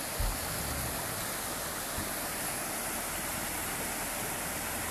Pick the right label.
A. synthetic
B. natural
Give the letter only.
B